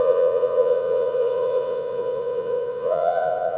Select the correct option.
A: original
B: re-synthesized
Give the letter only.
B